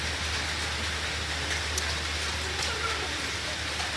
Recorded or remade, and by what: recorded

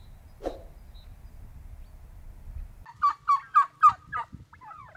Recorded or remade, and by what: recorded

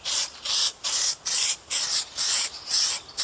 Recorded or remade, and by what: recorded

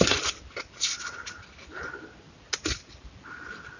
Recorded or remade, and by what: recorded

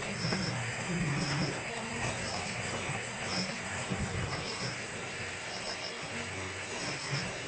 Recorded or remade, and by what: remade, codec, SNAC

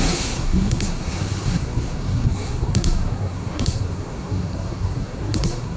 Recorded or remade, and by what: remade, codec, SNAC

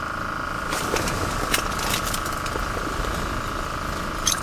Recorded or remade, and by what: recorded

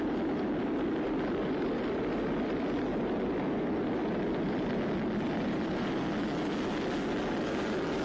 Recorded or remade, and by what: recorded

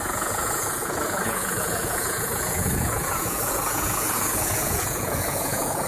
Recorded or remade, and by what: remade, vocoder, Vocos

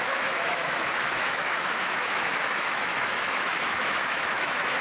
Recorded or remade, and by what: remade, autoencoder, DAC-VAE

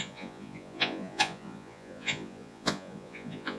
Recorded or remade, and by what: remade, vocoder, Vocos